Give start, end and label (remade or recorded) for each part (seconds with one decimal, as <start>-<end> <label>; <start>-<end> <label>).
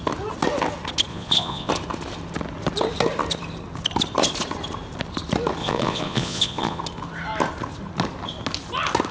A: 0.0-1.1 recorded; 1.1-1.7 remade; 1.7-5.6 recorded; 5.6-6.8 remade; 6.8-9.1 recorded